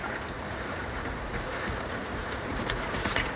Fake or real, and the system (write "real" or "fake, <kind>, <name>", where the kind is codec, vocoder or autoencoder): fake, vocoder, Vocos